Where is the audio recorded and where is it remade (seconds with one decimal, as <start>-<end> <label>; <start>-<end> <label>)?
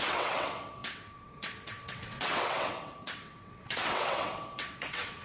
0.0-5.2 remade